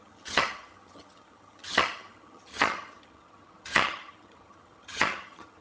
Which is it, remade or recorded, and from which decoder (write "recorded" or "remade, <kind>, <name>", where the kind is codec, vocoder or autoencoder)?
remade, vocoder, HiFi-GAN